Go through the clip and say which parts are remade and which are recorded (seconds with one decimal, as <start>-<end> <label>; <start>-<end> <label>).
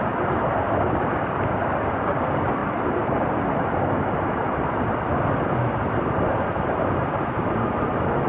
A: 0.0-8.3 recorded